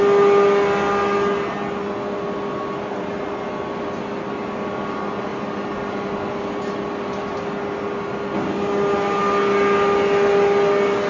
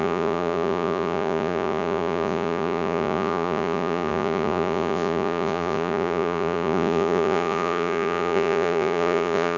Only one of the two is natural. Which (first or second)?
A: first